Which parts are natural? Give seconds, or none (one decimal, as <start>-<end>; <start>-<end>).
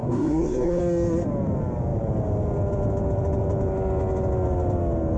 0.8-5.2